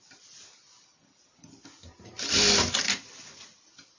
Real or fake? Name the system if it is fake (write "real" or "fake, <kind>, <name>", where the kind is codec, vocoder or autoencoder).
real